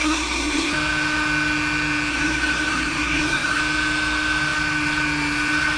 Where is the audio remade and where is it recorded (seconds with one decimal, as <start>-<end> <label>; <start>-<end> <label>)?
0.0-0.7 remade; 0.7-2.1 recorded; 2.1-3.6 remade; 3.6-5.8 recorded